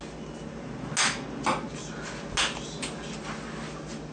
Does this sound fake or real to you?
real